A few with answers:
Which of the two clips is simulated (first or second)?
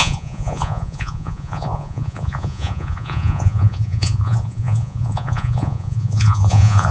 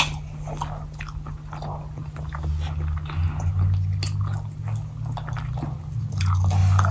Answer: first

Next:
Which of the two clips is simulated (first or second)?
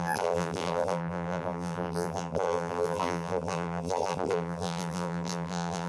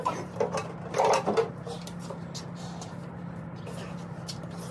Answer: first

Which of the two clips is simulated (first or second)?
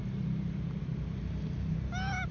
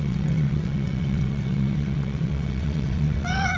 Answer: second